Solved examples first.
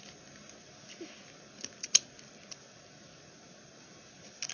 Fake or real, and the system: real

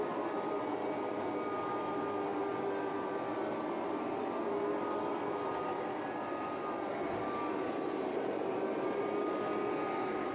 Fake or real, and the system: real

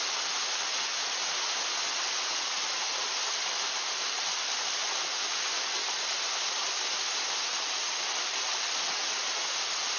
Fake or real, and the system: real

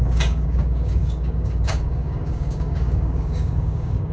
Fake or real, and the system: fake, codec, DAC